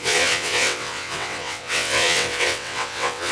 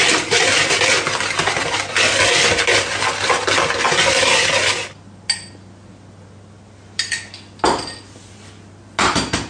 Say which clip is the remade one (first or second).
first